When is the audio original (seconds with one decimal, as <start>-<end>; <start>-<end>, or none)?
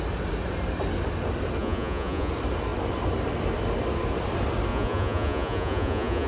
0.0-1.6; 2.3-4.7